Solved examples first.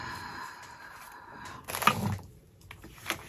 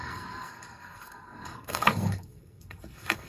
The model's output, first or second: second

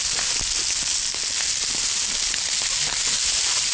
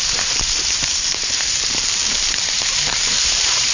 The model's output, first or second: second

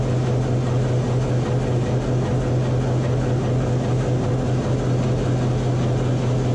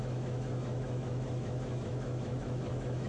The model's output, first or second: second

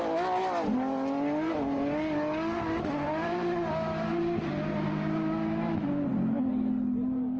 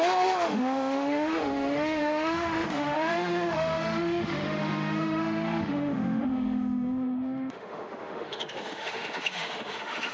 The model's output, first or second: second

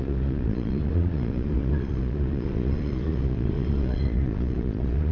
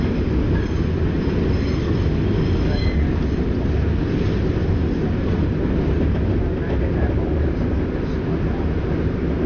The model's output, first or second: first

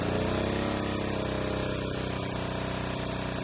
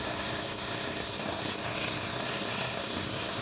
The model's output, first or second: second